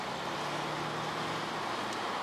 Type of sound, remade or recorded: recorded